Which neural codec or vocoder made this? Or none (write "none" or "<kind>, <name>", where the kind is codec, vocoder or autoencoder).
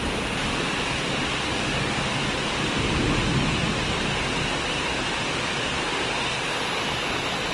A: none